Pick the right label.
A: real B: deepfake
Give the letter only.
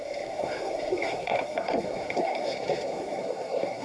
B